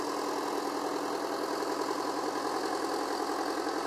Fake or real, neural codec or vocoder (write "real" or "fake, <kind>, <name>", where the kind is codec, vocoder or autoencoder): real